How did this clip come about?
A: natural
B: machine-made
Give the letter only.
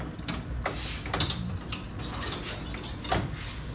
A